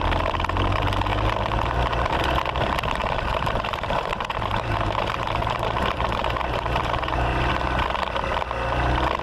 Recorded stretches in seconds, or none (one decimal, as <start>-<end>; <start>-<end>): 0.0-3.0; 7.5-9.2